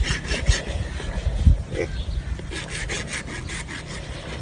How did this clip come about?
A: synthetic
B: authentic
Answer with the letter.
B